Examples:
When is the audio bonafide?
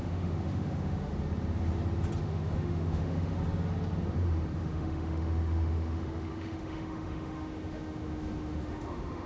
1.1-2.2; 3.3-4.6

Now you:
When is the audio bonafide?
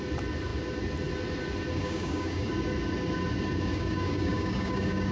0.0-1.8; 2.5-3.7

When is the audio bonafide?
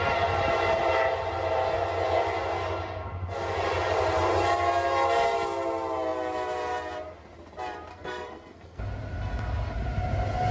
0.0-7.9; 8.8-10.5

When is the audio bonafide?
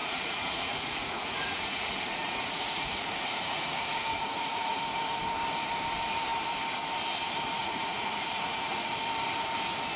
4.8-7.6; 8.9-10.0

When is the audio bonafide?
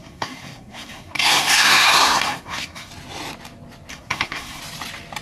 2.9-3.9; 4.6-5.2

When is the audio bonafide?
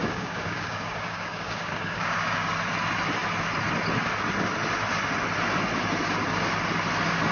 2.5-7.3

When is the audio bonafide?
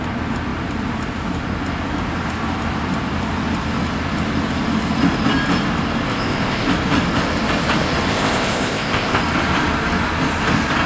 0.0-6.1; 6.7-8.1; 9.2-10.9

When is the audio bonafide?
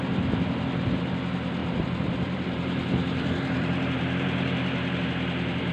0.0-1.6; 5.0-5.7